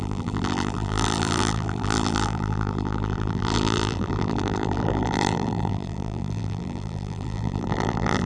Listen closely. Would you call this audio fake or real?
fake